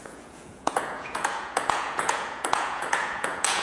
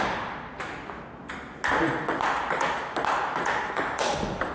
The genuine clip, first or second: second